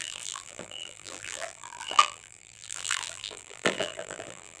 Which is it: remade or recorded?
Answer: remade